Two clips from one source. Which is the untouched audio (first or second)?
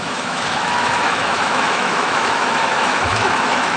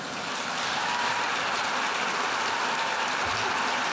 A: second